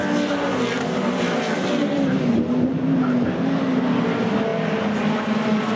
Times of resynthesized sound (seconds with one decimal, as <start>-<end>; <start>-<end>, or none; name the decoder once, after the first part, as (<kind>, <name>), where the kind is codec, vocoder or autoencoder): none